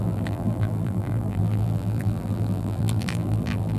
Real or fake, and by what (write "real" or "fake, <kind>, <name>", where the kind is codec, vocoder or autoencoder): fake, vocoder, BigVGAN v2